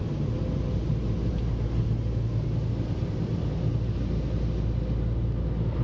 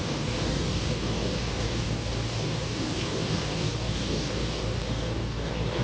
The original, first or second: first